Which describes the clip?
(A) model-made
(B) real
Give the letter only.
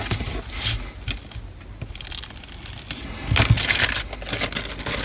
B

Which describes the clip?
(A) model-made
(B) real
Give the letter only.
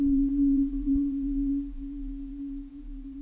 A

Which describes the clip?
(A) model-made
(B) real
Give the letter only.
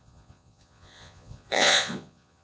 A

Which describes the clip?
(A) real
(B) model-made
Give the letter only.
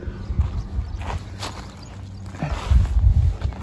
A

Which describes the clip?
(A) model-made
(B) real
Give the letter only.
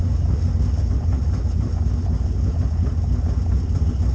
B